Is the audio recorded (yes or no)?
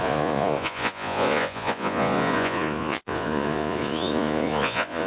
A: no